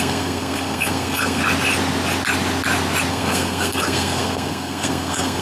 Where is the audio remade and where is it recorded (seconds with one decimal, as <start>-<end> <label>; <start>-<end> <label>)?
0.0-1.4 remade; 1.4-3.1 recorded; 3.1-5.4 remade

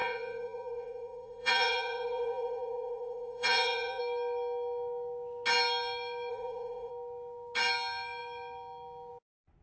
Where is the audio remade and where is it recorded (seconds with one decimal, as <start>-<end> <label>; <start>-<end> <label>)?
0.0-4.0 remade; 4.0-6.3 recorded; 6.3-6.9 remade; 6.9-9.6 recorded